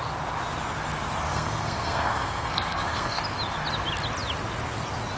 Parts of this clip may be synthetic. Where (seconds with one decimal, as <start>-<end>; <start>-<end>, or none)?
1.3-3.2